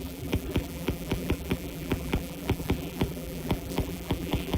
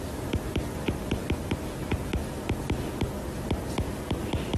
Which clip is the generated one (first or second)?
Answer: first